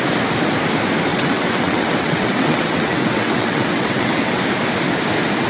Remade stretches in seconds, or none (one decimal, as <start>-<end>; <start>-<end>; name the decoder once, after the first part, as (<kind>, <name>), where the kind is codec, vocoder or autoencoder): 1.1-4.4 (vocoder, WaveNeXt)